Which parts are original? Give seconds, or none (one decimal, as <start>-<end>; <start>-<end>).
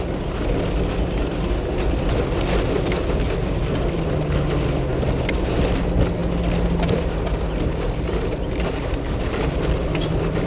0.0-10.5